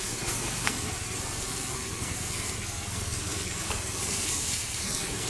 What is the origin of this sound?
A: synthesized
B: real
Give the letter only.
A